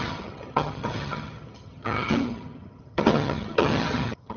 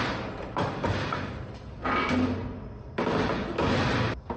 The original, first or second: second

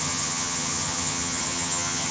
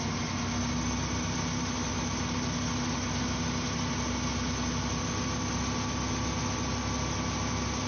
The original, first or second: second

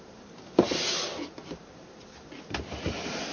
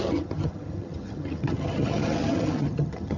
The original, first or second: first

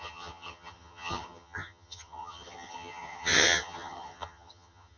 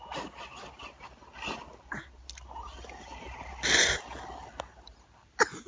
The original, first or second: second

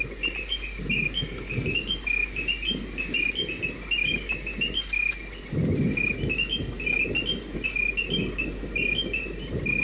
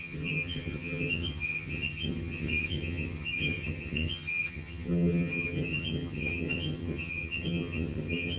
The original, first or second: first